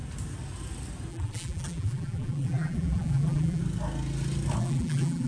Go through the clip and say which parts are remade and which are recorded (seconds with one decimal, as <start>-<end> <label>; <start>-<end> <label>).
0.0-1.1 recorded; 1.1-3.6 remade; 3.6-4.6 recorded; 4.6-5.3 remade